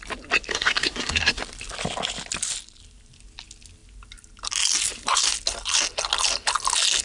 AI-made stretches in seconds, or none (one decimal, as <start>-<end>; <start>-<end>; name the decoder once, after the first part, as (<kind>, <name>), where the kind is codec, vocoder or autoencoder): 0.5-1.4 (codec, SNAC)